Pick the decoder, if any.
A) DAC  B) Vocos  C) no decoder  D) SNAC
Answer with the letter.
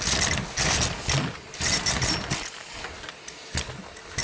C